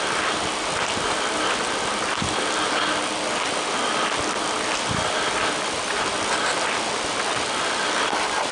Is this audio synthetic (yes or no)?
no